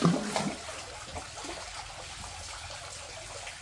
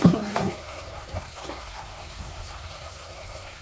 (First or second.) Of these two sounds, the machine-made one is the second